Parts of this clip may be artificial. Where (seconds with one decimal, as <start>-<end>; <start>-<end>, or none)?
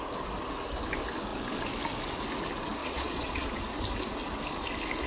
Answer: 2.8-3.6